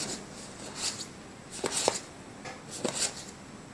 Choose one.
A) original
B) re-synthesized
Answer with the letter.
A